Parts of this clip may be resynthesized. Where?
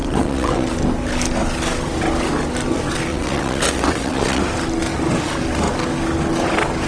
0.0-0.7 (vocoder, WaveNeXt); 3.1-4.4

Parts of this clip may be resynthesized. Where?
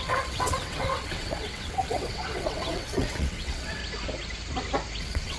0.0-3.8 (vocoder, WaveNeXt); 5.0-5.4